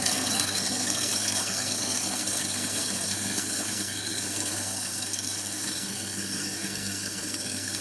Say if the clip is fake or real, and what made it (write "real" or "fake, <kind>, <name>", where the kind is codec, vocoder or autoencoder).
fake, codec, SNAC